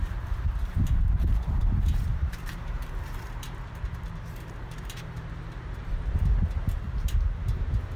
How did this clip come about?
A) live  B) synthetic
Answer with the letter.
B